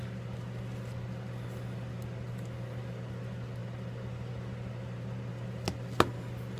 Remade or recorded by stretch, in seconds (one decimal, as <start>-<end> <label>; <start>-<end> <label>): 0.0-6.6 recorded